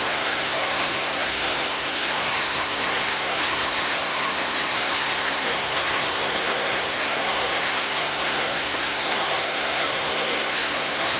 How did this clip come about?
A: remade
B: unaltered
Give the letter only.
A